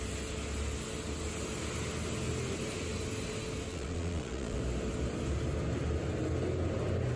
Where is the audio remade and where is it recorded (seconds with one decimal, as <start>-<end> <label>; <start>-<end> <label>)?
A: 0.0-3.7 recorded; 3.7-4.6 remade; 4.6-7.2 recorded